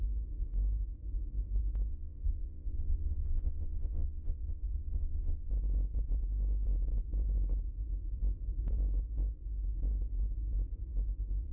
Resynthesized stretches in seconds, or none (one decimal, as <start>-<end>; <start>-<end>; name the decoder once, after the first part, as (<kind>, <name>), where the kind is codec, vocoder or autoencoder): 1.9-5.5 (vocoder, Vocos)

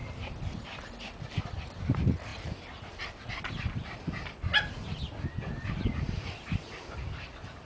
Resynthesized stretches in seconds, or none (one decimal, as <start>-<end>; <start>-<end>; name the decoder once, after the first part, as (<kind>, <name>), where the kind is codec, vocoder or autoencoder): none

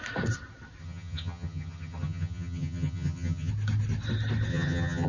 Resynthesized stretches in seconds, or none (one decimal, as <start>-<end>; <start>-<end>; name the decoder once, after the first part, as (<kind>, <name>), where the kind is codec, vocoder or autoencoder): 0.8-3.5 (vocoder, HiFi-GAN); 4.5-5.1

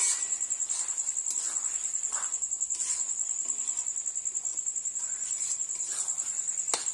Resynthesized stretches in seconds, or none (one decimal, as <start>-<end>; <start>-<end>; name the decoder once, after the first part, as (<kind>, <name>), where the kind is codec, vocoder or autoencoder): none